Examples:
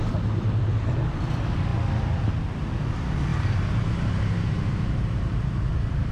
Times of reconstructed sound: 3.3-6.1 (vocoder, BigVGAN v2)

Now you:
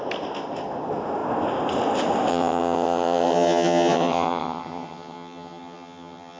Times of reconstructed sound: 2.3-6.4 (vocoder, HiFi-GAN)